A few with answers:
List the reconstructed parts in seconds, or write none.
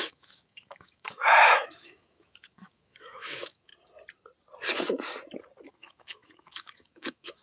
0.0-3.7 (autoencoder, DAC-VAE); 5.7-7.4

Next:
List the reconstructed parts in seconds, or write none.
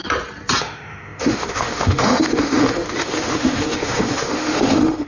0.6-5.1 (autoencoder, DAC-VAE)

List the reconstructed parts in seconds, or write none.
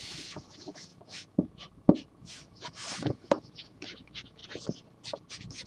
0.0-4.4 (autoencoder, DAC-VAE); 5.3-5.7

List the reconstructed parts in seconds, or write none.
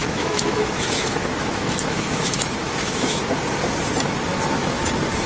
0.0-3.2 (autoencoder, DAC-VAE); 4.3-4.8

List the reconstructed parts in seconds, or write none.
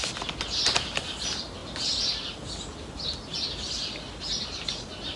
none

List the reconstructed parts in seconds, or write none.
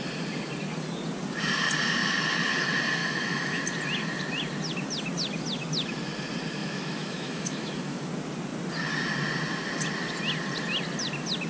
3.0-3.6 (autoencoder, DAC-VAE); 6.6-8.1